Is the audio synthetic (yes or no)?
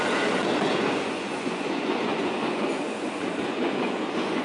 yes